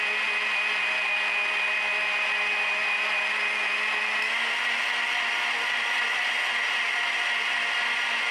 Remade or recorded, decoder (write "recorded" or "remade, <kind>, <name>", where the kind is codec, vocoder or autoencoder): recorded